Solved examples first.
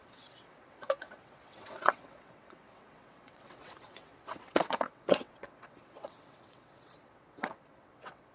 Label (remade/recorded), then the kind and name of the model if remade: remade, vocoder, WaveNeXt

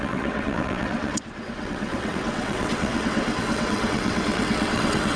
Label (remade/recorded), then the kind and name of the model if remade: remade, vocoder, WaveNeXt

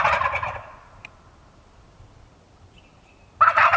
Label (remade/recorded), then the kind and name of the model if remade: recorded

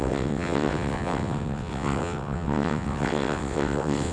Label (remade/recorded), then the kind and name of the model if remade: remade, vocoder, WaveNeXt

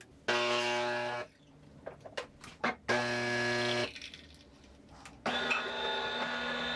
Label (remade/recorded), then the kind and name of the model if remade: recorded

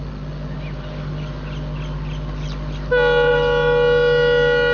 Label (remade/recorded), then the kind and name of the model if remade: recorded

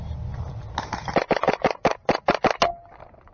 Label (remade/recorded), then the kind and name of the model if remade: recorded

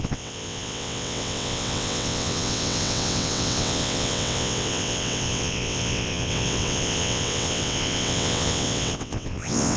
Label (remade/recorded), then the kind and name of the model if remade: remade, vocoder, WaveNeXt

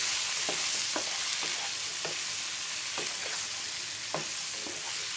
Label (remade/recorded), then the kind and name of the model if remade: recorded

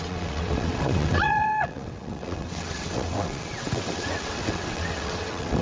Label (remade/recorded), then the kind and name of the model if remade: remade, vocoder, WaveNeXt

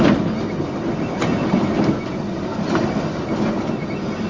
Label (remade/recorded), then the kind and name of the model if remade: recorded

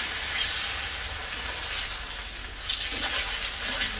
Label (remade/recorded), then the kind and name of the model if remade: recorded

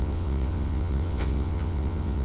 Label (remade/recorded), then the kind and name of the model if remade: remade, vocoder, WaveNeXt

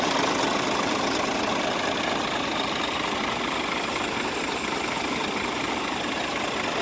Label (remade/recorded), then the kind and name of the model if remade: recorded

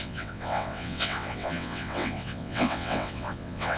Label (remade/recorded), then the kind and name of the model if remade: remade, vocoder, WaveNeXt